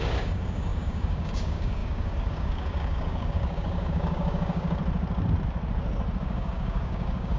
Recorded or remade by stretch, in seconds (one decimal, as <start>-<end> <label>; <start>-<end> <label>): 0.0-4.8 remade; 4.8-6.2 recorded; 6.2-7.4 remade